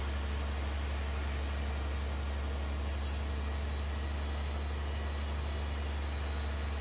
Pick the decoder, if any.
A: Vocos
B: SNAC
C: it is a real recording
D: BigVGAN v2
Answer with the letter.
C